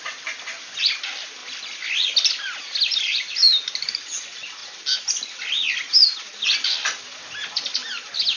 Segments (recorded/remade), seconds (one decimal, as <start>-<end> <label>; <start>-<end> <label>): 0.0-8.4 recorded